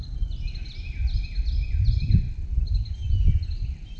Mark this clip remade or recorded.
recorded